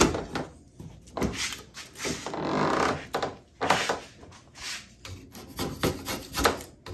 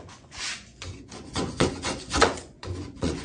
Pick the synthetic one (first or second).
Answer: second